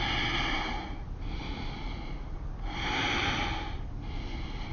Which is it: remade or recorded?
recorded